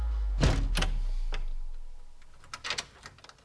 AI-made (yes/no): no